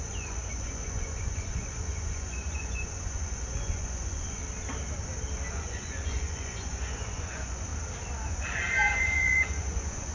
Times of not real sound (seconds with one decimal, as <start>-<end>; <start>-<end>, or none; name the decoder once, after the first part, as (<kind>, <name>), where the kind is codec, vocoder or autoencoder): 0.0-4.4 (vocoder, Vocos); 5.5-7.7; 8.3-10.1